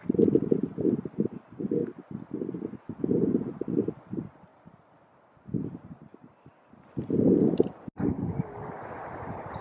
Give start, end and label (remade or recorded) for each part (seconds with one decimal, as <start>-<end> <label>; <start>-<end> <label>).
0.0-1.8 remade; 1.8-3.0 recorded; 3.0-4.5 remade; 4.5-9.0 recorded; 9.0-9.6 remade